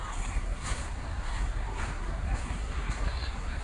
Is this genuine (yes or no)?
no